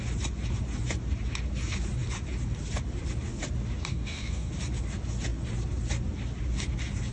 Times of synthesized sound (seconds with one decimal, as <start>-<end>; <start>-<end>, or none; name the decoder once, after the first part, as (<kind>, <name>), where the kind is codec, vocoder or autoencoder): 3.9-4.5 (codec, DAC)

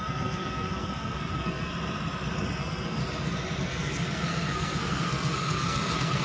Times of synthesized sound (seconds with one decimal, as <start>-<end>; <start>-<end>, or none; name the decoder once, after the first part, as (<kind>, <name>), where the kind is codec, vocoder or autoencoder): 0.0-1.7 (codec, SNAC); 2.6-3.0; 3.6-6.2

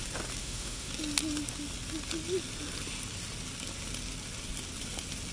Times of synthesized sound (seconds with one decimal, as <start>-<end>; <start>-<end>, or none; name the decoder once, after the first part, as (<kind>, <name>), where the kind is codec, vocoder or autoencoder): 0.4-0.9 (autoencoder, DAC-VAE)